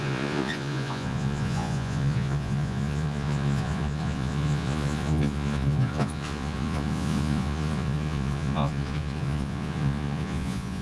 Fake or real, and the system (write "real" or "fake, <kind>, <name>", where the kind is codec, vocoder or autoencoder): fake, vocoder, Vocos